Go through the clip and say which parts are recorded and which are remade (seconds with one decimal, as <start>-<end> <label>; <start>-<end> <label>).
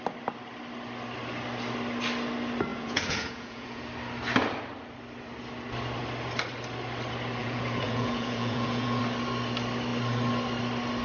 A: 0.0-2.7 recorded; 2.7-3.8 remade; 3.8-7.4 recorded; 7.4-9.0 remade; 9.0-11.0 recorded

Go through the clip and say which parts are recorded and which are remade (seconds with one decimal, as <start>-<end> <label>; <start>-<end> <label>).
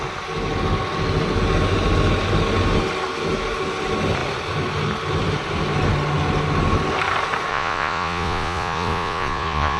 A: 0.0-7.5 recorded; 7.5-9.8 remade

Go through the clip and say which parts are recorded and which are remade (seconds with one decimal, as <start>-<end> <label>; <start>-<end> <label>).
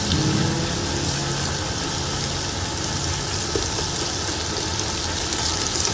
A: 0.0-5.9 recorded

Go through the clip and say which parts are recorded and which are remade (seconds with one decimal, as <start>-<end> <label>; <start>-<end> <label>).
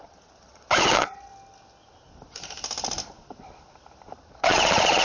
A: 0.0-1.3 remade; 1.3-4.3 recorded; 4.3-5.0 remade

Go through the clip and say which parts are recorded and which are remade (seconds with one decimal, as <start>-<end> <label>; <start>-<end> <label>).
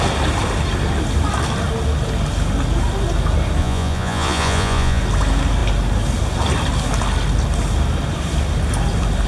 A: 0.0-3.6 recorded; 3.6-5.0 remade; 5.0-9.3 recorded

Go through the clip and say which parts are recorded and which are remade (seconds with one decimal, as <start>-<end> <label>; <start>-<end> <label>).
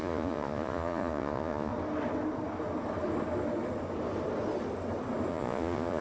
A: 0.0-1.7 remade; 1.7-5.3 recorded; 5.3-6.0 remade